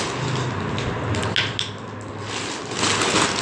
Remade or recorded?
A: recorded